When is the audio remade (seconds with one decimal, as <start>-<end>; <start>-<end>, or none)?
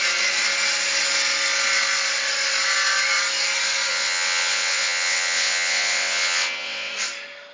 3.9-6.9